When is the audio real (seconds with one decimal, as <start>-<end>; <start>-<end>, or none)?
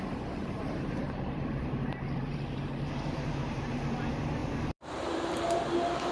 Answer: 0.0-0.4; 4.0-4.4; 5.6-6.1